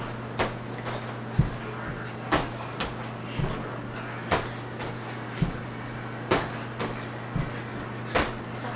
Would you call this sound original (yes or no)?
yes